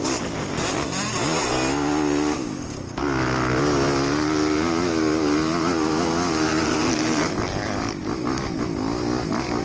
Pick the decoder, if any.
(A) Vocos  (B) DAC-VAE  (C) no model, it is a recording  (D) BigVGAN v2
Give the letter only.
C